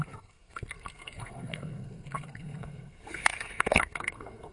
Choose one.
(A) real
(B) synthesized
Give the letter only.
B